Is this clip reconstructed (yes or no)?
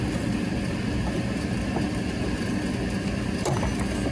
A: no